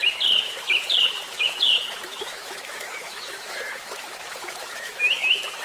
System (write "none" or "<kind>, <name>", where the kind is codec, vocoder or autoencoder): autoencoder, DAC-VAE